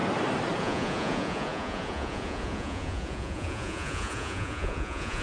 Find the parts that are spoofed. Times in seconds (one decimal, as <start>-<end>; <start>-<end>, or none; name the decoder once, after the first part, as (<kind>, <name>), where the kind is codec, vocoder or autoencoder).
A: 0.6-5.2 (vocoder, Vocos)